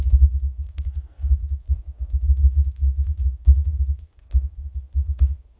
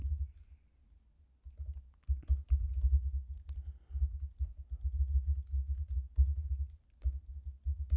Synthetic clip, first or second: first